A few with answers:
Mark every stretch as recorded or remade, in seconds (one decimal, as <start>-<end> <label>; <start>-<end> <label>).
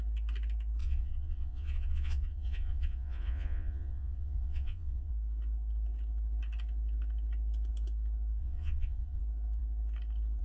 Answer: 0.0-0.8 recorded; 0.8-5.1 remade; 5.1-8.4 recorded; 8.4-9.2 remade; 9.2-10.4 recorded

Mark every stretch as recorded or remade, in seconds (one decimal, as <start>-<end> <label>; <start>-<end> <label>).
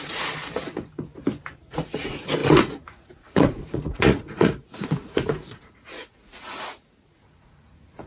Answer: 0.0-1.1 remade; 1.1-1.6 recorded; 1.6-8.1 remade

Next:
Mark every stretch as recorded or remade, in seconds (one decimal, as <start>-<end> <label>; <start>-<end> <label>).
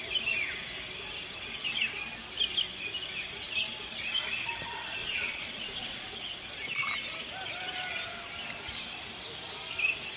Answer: 0.0-5.0 recorded; 5.0-6.1 remade; 6.1-10.2 recorded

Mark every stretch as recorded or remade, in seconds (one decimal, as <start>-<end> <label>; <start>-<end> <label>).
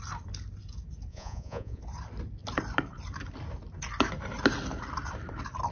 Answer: 0.0-1.1 recorded; 1.1-1.8 remade; 1.8-5.7 recorded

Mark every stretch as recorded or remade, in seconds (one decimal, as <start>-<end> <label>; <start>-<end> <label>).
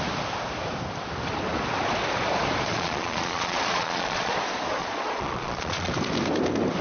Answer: 0.0-2.7 recorded; 2.7-4.3 remade; 4.3-4.8 recorded; 4.8-5.9 remade; 5.9-6.8 recorded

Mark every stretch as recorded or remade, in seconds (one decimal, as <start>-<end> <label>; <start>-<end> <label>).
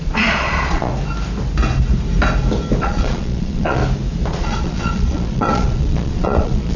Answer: 0.0-0.9 remade; 0.9-2.8 recorded; 2.8-3.8 remade; 3.8-4.3 recorded; 4.3-6.8 remade